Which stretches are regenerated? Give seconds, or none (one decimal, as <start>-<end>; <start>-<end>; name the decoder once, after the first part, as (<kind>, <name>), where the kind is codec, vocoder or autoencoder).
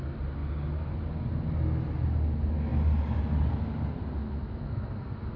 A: 4.2-5.0 (autoencoder, DAC-VAE)